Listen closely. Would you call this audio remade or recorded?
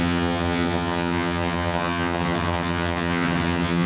remade